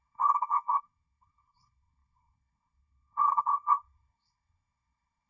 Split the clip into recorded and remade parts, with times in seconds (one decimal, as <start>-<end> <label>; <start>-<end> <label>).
0.0-5.3 remade